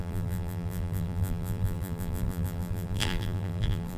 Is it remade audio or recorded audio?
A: remade